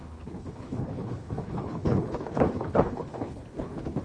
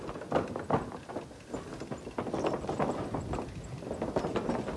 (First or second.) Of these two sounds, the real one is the second